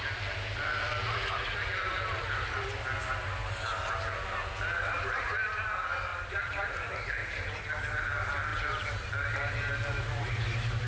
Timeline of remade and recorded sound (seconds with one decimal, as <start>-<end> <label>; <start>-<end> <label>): 0.0-6.1 recorded; 6.1-6.7 remade; 6.7-8.5 recorded; 8.5-9.1 remade; 9.1-10.9 recorded